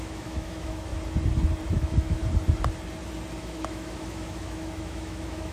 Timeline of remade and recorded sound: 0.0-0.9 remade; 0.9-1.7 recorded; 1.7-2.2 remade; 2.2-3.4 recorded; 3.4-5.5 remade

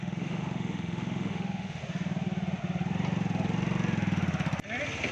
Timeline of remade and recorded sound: 0.0-1.8 remade; 1.8-5.1 recorded

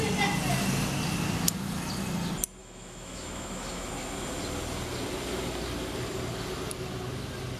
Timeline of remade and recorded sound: 0.0-2.6 recorded; 2.6-3.9 remade; 3.9-7.6 recorded

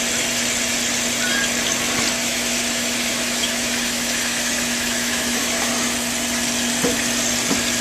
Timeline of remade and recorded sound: 0.0-2.2 recorded; 2.2-5.7 remade; 5.7-7.8 recorded

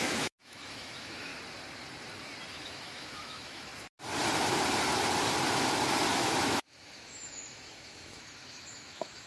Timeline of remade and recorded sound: 0.0-1.3 remade; 1.3-2.5 recorded; 2.5-3.7 remade; 3.7-6.2 recorded; 6.2-9.3 remade